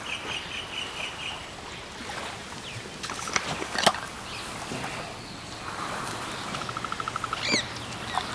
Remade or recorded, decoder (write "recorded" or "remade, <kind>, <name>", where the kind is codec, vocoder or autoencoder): recorded